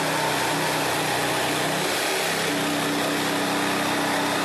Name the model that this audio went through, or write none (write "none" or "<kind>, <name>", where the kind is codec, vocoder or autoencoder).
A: none